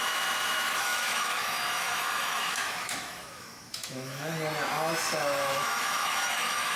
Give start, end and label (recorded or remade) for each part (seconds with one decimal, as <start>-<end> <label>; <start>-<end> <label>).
0.0-4.3 remade; 4.3-5.0 recorded; 5.0-6.8 remade